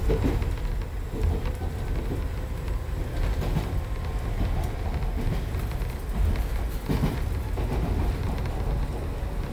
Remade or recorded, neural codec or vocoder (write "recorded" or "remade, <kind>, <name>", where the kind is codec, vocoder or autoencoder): recorded